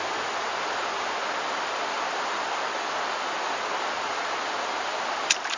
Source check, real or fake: real